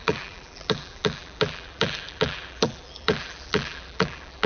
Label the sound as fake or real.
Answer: fake